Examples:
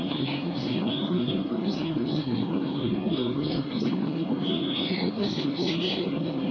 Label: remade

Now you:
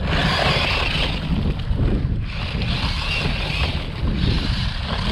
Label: recorded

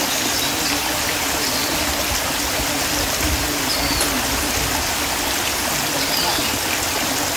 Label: recorded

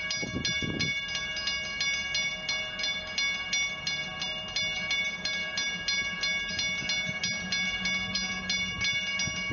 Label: recorded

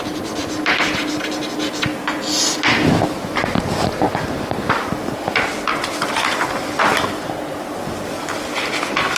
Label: recorded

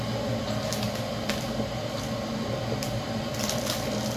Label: recorded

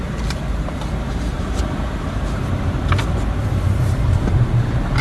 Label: remade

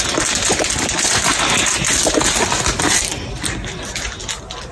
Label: recorded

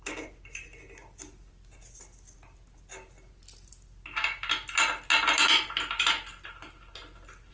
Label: recorded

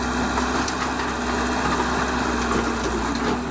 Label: recorded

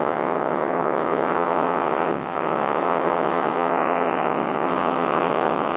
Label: remade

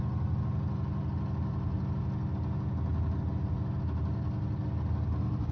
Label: recorded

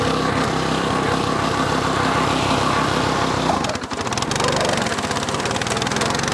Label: remade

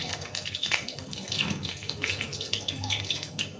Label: remade